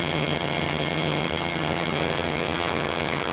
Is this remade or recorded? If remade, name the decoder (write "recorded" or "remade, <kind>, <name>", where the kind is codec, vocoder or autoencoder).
remade, vocoder, HiFi-GAN